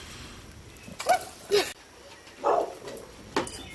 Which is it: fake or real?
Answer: real